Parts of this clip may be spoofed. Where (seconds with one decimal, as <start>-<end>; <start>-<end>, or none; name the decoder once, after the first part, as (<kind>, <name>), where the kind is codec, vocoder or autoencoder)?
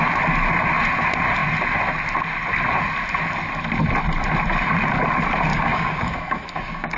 5.5-7.0 (codec, DAC)